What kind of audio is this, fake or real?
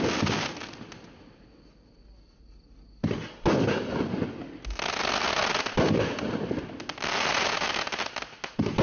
real